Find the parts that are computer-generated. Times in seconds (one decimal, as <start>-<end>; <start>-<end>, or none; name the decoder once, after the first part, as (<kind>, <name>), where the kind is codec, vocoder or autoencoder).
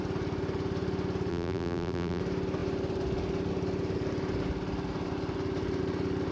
1.3-2.2 (vocoder, BigVGAN v2)